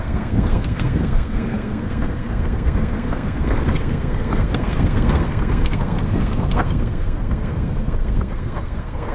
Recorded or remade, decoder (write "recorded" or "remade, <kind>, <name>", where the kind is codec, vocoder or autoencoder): remade, codec, SNAC